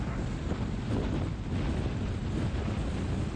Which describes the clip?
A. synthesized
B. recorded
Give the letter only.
B